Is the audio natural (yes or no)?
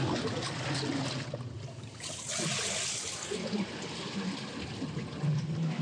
yes